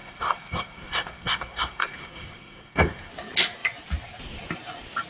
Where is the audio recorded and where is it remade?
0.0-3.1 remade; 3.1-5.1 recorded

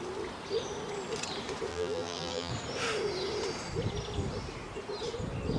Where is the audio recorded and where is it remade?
0.0-1.7 recorded; 1.7-2.5 remade; 2.5-5.6 recorded

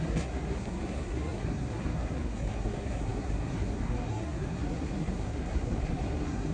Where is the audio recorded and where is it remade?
0.0-6.5 remade